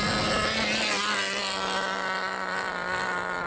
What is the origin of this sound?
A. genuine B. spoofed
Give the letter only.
A